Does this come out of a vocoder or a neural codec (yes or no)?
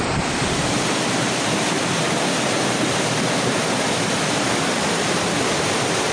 yes